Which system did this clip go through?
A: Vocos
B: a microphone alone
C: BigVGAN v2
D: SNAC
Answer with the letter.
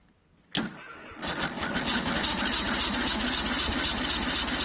B